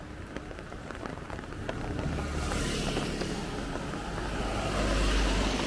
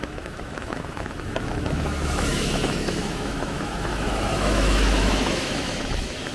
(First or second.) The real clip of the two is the first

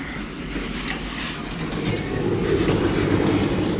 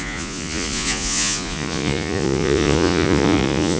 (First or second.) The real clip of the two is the first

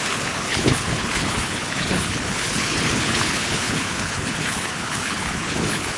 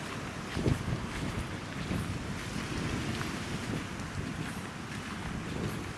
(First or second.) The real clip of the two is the second